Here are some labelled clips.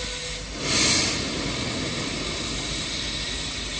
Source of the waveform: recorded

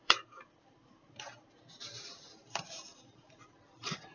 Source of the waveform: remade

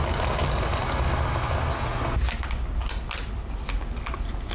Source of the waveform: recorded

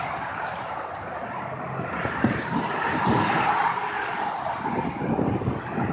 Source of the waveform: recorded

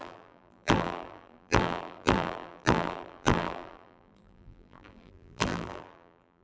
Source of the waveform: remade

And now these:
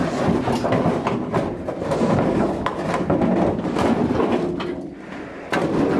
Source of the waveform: recorded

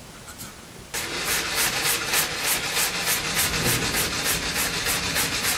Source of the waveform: recorded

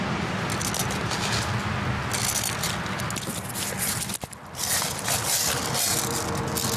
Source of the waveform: recorded